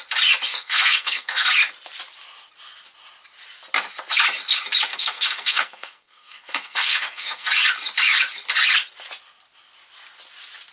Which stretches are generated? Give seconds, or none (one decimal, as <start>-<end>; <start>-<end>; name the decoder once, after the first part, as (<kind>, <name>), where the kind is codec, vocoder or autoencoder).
0.5-1.5 (codec, SNAC); 4.9-7.5